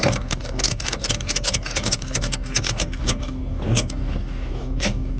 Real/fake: fake